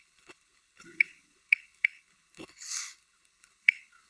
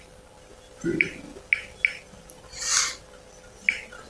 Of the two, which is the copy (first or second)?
first